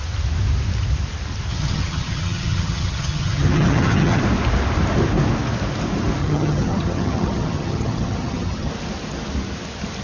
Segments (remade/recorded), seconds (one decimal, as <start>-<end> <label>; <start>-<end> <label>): 0.0-1.5 recorded; 1.5-4.2 remade; 4.2-6.2 recorded; 6.2-8.7 remade; 8.7-10.0 recorded